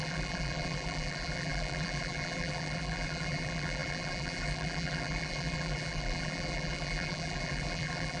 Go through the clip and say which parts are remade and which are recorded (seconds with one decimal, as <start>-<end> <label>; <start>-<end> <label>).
0.0-8.2 remade